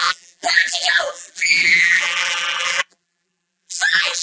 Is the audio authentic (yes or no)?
no